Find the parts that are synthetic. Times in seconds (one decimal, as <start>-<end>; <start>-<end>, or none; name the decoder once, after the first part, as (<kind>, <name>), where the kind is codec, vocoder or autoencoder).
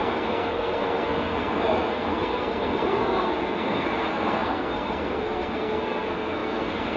0.0-7.0 (codec, SNAC)